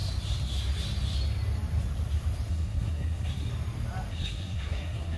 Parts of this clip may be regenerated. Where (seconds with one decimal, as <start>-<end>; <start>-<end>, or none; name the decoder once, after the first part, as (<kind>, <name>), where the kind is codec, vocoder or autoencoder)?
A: 2.5-3.5 (codec, SNAC); 4.1-5.2